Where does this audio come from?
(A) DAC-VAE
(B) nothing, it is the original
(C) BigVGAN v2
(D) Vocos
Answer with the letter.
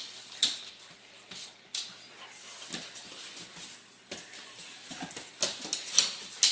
B